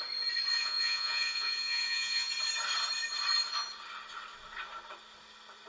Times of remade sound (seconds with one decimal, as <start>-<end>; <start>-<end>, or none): 0.6-2.3